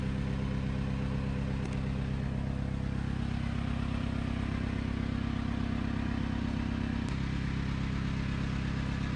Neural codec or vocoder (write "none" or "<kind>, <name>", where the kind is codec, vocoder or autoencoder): none